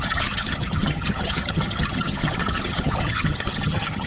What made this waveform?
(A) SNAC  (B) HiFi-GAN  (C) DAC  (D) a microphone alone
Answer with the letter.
B